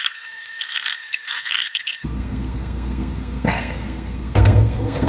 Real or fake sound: fake